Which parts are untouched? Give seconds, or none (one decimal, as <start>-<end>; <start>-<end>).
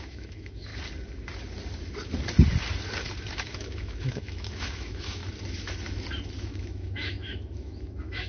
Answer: 0.7-3.3; 5.2-6.4